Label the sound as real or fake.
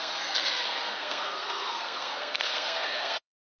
fake